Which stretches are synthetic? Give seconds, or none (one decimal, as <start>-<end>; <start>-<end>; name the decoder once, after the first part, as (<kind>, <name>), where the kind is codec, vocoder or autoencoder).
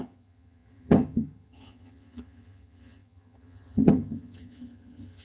0.0-5.2 (vocoder, HiFi-GAN)